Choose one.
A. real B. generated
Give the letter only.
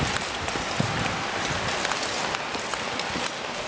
A